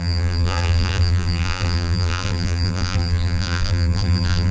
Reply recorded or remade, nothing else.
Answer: remade